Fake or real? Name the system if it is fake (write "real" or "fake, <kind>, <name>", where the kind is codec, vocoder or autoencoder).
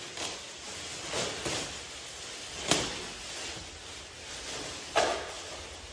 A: real